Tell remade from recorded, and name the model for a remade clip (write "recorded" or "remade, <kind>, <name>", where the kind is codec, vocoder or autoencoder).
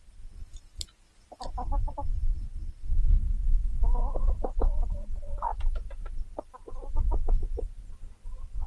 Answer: recorded